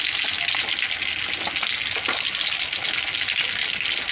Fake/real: real